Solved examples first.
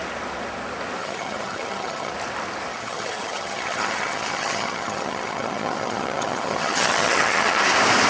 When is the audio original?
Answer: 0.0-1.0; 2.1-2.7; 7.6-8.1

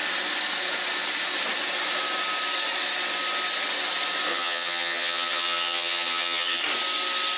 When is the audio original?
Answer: 0.0-4.3; 6.6-7.4

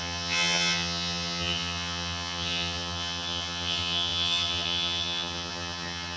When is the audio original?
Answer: none

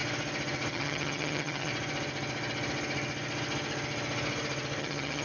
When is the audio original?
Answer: 0.0-0.7; 1.7-4.8